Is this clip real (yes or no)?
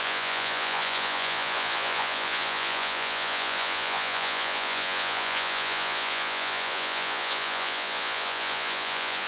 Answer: no